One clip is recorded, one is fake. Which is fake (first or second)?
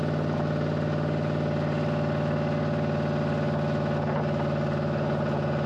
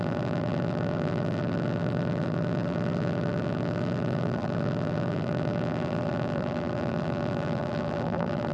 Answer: second